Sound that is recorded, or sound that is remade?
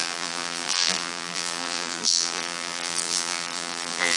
remade